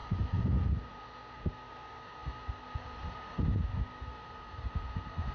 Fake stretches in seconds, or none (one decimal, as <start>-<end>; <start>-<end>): none